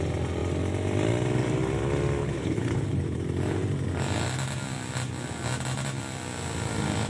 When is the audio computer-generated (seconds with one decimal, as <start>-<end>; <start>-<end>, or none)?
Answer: 2.2-3.2